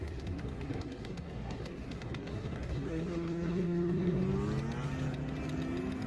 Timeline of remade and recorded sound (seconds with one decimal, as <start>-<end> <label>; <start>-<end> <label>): 0.0-4.2 remade; 4.2-6.1 recorded